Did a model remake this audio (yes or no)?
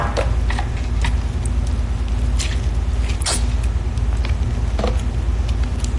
no